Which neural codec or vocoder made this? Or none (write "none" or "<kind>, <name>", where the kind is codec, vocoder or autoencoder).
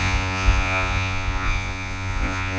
vocoder, Vocos